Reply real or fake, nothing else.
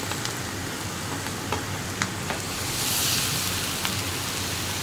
real